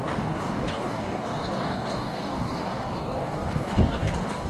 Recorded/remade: remade